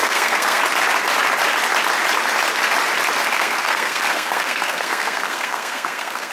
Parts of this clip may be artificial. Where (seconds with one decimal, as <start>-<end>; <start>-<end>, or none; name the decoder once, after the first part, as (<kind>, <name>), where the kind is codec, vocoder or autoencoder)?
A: 0.0-0.6 (codec, SNAC); 3.3-6.3